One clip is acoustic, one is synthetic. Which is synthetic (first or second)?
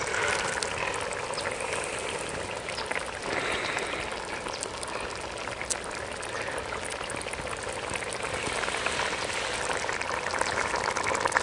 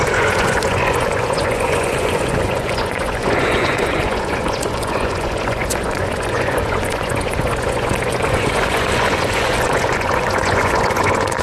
second